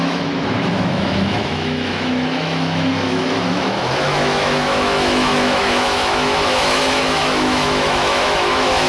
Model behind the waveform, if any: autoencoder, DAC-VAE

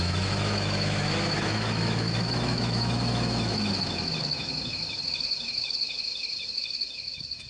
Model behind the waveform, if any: autoencoder, DAC-VAE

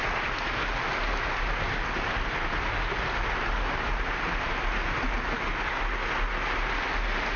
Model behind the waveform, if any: none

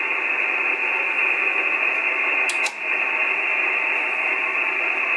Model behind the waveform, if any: none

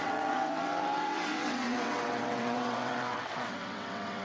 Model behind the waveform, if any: vocoder, WaveNeXt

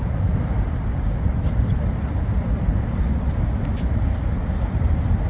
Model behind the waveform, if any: vocoder, BigVGAN v2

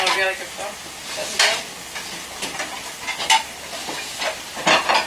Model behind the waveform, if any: none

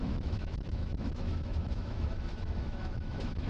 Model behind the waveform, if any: autoencoder, DAC-VAE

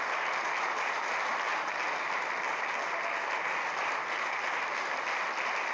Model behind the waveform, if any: none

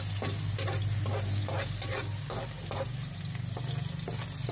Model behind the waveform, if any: none